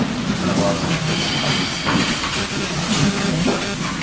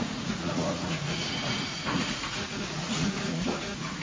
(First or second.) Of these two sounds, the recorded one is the first